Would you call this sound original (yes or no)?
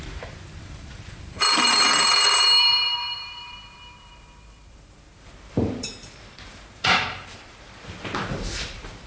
no